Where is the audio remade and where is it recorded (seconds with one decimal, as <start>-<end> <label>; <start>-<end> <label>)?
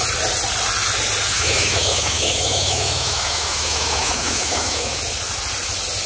0.0-1.3 recorded; 1.3-5.0 remade; 5.0-6.1 recorded